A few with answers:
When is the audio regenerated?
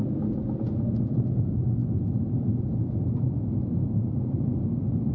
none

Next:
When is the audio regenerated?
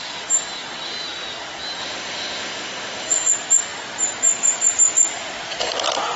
1.8-3.3 (autoencoder, DAC-VAE)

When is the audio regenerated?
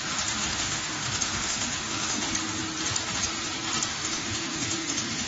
0.4-2.3 (autoencoder, DAC-VAE); 3.9-5.3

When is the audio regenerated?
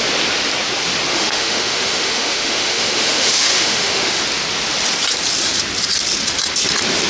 1.1-4.2 (autoencoder, DAC-VAE)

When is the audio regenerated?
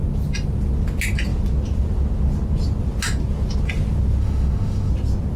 4.2-4.9 (autoencoder, DAC-VAE)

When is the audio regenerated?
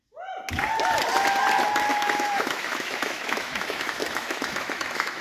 1.9-5.2 (autoencoder, DAC-VAE)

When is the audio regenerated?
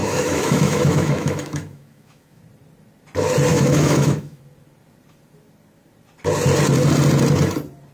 0.0-2.4 (autoencoder, DAC-VAE); 3.5-4.4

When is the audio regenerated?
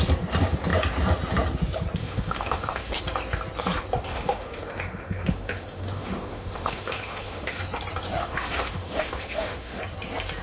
2.0-3.0 (autoencoder, DAC-VAE); 4.1-7.6; 8.2-9.8